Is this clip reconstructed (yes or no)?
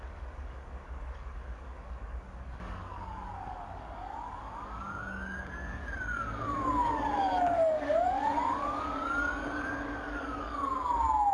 yes